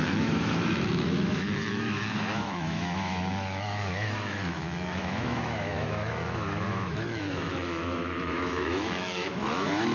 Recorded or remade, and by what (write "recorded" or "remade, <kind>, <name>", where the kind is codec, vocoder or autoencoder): remade, autoencoder, DAC-VAE